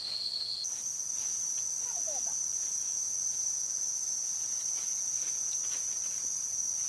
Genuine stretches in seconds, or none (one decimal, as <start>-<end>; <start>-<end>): 0.0-2.5; 3.8-6.9